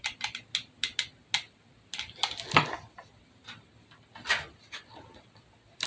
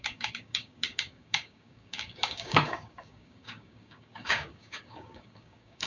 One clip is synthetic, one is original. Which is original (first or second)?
first